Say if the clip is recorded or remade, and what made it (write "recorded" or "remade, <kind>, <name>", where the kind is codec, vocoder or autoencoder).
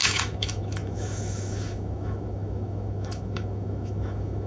remade, autoencoder, DAC-VAE